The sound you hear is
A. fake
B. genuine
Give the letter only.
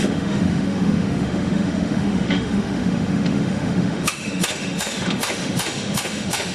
A